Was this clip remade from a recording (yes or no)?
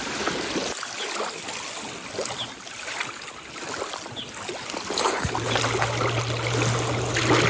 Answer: no